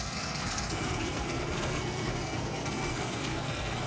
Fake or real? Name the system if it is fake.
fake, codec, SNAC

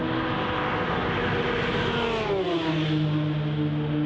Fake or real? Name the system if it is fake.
real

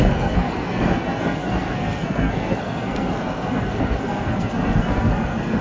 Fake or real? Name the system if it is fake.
fake, codec, SNAC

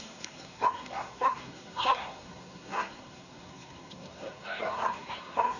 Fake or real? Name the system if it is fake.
fake, codec, SNAC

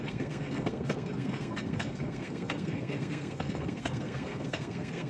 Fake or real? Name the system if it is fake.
fake, codec, SNAC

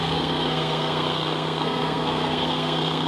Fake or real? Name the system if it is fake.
fake, codec, SNAC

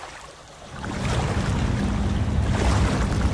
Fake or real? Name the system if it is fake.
real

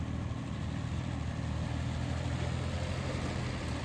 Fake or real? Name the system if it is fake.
real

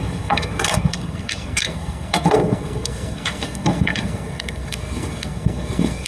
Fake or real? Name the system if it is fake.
fake, codec, SNAC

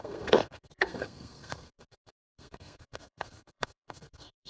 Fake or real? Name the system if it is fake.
fake, codec, SNAC